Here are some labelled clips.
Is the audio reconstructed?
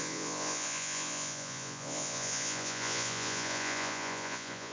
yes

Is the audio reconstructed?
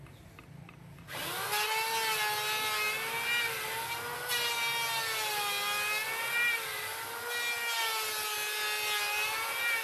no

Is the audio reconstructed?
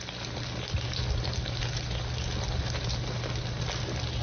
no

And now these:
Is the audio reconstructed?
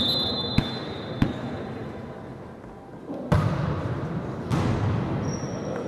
no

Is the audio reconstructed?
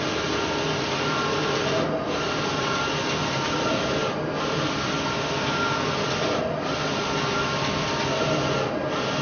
no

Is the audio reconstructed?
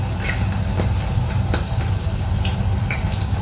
no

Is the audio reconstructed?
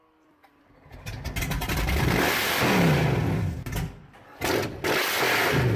no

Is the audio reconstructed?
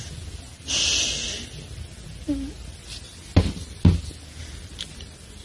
no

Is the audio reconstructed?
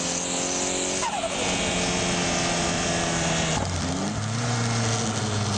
no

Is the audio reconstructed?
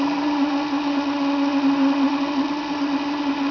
no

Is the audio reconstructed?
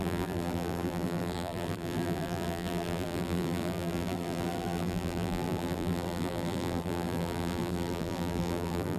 yes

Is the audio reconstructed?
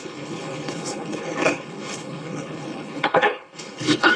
yes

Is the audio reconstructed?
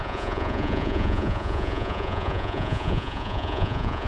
yes